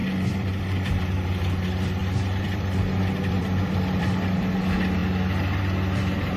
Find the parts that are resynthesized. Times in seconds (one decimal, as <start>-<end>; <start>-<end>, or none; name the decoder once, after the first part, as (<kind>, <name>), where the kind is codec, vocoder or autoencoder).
0.0-1.0 (vocoder, BigVGAN v2); 2.0-4.0